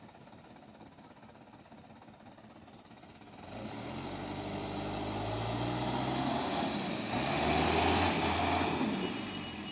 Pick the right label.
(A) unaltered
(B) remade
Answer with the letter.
A